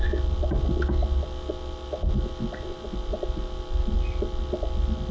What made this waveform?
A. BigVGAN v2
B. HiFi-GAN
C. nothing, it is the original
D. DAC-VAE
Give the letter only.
C